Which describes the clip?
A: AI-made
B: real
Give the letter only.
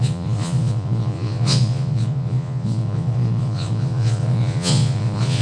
A